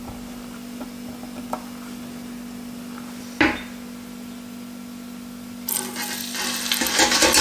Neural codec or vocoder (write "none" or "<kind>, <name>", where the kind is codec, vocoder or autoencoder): none